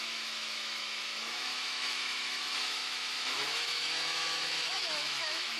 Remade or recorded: remade